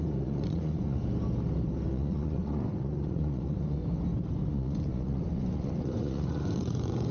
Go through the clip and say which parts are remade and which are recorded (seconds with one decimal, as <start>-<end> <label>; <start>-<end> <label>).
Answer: 0.0-1.0 remade; 1.0-1.9 recorded; 1.9-3.8 remade; 3.8-4.5 recorded; 4.5-7.1 remade